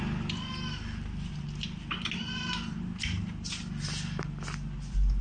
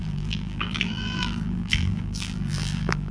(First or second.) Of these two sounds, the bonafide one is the first